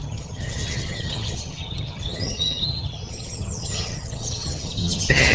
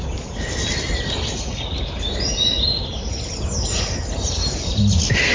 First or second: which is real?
second